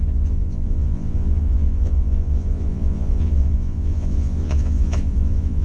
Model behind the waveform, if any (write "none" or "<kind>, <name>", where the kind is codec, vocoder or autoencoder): vocoder, Vocos